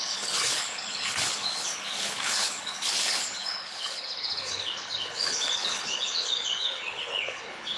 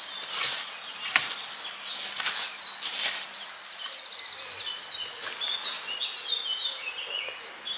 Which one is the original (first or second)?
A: second